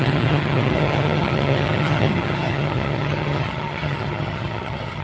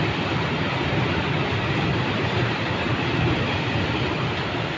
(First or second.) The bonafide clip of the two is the second